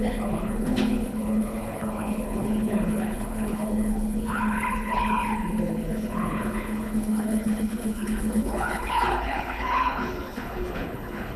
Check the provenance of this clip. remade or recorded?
remade